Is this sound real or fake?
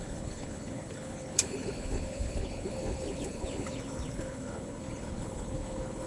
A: fake